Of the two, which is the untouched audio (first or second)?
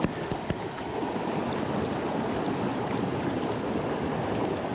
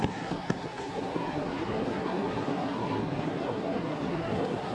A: first